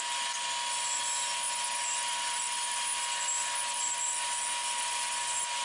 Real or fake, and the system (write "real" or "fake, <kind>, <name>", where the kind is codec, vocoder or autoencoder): real